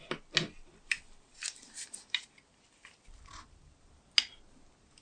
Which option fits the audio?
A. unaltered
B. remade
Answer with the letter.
A